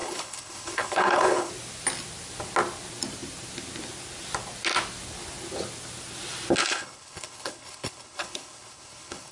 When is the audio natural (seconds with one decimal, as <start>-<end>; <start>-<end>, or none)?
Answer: 1.5-6.6